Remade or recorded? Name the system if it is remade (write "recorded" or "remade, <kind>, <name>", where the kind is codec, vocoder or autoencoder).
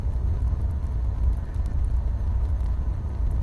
recorded